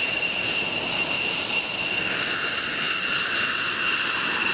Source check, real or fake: real